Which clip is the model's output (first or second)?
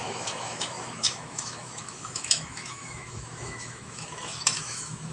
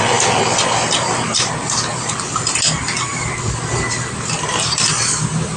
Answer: first